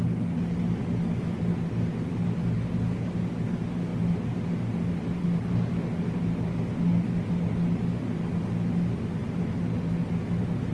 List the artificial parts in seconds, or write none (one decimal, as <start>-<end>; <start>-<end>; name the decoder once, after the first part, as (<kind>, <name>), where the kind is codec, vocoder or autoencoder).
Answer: none